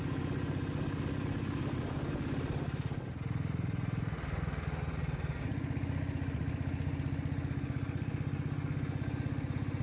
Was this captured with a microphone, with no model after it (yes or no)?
yes